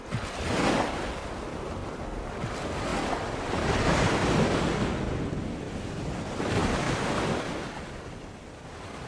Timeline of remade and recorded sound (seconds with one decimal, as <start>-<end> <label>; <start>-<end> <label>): 0.0-2.9 recorded; 2.9-4.9 remade; 4.9-6.6 recorded; 6.6-9.1 remade